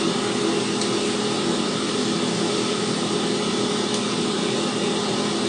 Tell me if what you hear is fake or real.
real